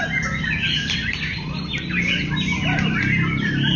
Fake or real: real